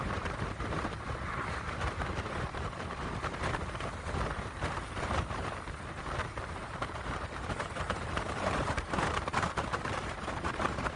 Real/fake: fake